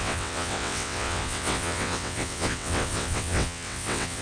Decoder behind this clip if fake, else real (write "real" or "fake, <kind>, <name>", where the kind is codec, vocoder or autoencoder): fake, vocoder, WaveNeXt